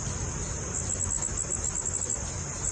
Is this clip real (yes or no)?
yes